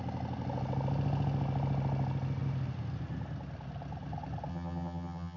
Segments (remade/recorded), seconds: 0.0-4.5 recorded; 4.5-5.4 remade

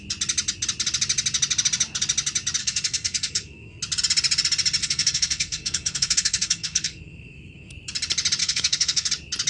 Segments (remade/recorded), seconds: 0.0-2.6 recorded; 2.6-3.8 remade; 3.8-4.8 recorded; 4.8-7.7 remade; 7.7-8.4 recorded; 8.4-9.1 remade; 9.1-9.5 recorded

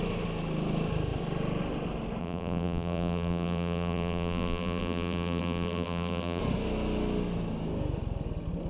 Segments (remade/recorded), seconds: 0.0-2.2 recorded; 2.2-6.4 remade; 6.4-8.7 recorded

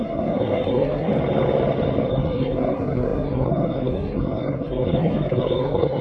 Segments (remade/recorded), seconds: 0.0-1.1 remade; 1.1-2.1 recorded; 2.1-6.0 remade

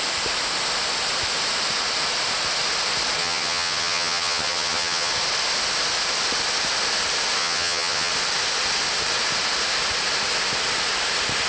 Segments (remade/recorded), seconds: 0.0-3.2 recorded; 3.2-5.1 remade; 5.1-7.4 recorded; 7.4-8.1 remade; 8.1-11.5 recorded

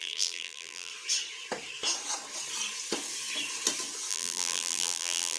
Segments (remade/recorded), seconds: 0.0-0.9 remade; 0.9-4.1 recorded; 4.1-5.4 remade